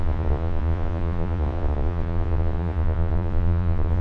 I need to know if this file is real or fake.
fake